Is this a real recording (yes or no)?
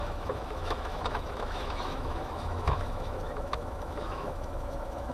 no